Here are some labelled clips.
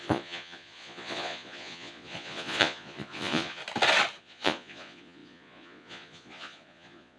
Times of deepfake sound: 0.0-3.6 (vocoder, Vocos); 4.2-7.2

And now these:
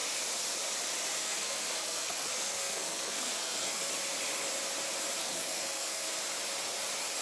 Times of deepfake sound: 1.2-3.9 (codec, SNAC); 5.2-6.2